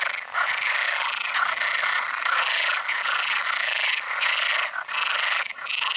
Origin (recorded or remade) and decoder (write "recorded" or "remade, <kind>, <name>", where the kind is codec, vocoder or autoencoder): recorded